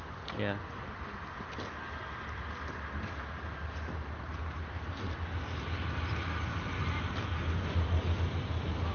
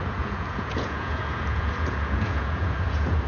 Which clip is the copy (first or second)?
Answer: second